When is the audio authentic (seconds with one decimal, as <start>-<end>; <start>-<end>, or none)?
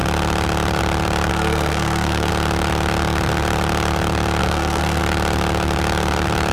0.0-1.3; 2.3-4.4; 5.0-6.5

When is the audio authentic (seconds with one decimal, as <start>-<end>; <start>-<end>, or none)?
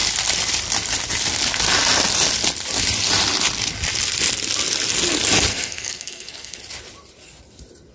0.0-5.5; 6.6-7.9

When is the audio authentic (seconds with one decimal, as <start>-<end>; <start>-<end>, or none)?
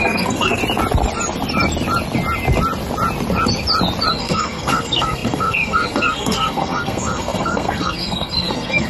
0.6-4.1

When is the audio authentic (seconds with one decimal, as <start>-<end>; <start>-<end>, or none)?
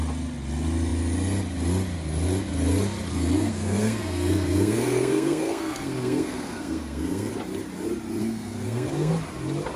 0.0-3.1; 7.3-8.2; 9.1-9.8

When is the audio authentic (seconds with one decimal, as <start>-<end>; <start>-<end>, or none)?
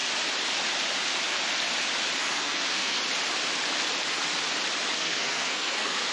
0.0-2.2; 3.0-4.9